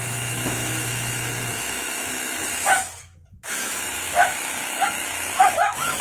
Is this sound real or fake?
fake